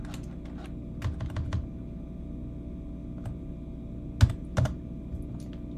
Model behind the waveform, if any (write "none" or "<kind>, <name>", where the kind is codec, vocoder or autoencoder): none